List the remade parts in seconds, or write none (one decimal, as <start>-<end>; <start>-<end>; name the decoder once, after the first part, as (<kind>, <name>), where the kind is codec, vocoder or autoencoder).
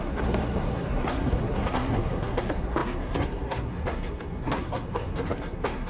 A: 0.0-5.9 (codec, SNAC)